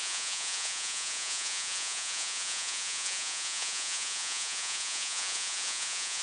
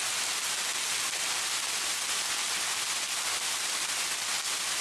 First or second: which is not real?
first